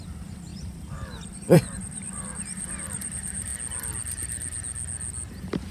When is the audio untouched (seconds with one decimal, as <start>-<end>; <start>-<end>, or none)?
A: 3.5-5.3